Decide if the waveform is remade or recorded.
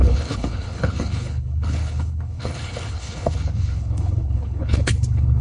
remade